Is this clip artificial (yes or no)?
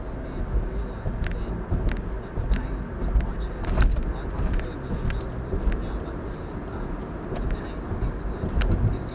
no